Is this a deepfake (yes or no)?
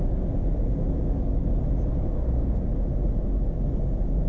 no